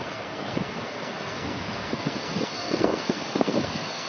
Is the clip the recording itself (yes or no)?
no